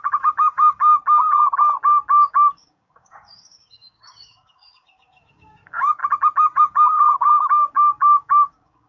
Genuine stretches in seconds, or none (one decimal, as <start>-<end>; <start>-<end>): 0.9-2.3; 6.0-6.6